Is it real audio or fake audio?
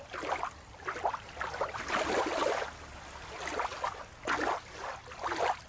real